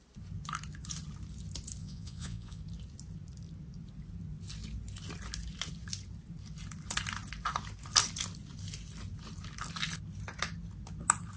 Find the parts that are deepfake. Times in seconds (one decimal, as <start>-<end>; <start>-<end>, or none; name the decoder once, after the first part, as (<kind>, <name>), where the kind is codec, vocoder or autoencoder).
1.8-2.6 (vocoder, Vocos)